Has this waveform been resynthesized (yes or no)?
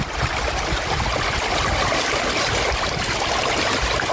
no